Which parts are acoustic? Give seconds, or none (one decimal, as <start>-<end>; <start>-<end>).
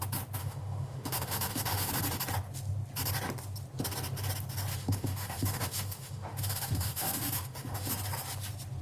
0.0-0.4; 1.9-4.7; 7.9-8.8